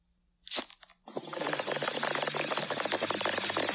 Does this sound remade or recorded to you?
recorded